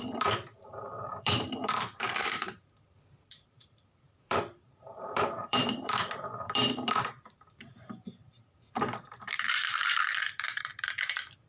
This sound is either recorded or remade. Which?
remade